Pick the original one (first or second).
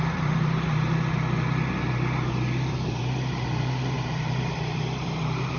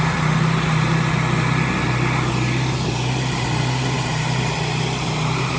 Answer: second